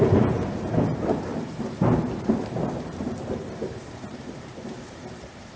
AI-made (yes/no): yes